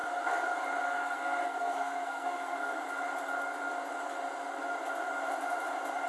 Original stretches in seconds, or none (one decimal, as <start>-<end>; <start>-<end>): 0.0-0.8; 2.7-6.1